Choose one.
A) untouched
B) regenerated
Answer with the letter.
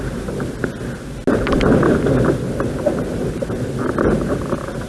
A